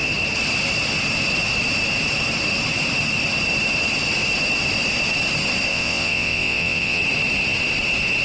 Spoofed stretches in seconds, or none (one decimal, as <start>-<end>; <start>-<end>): 5.7-7.0